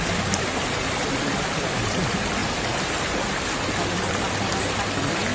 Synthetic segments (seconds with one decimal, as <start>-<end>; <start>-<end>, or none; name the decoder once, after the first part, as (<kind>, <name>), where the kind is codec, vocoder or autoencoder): 2.4-3.3 (vocoder, BigVGAN v2)